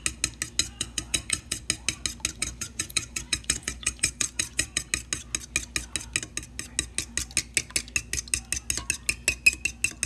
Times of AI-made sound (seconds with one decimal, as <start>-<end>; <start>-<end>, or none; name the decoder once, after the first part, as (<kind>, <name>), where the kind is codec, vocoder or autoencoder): 0.6-1.6 (vocoder, Vocos); 2.4-4.9